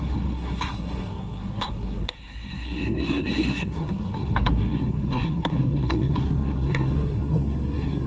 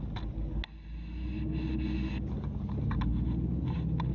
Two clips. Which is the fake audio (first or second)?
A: first